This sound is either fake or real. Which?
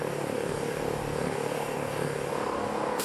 fake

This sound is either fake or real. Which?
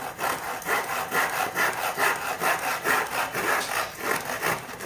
real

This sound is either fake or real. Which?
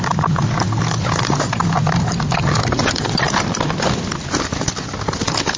fake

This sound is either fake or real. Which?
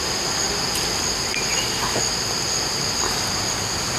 real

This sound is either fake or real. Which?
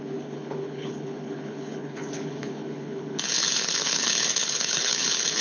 fake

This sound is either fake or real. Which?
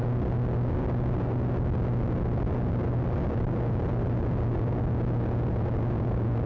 real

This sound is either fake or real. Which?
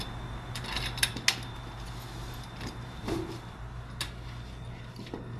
real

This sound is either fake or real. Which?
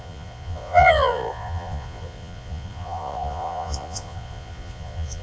fake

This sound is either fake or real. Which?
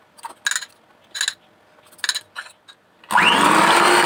real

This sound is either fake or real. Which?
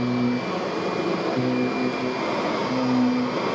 real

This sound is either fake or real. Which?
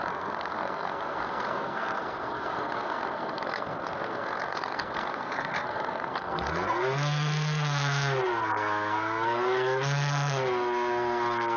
fake